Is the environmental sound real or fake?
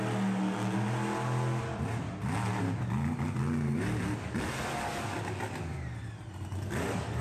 real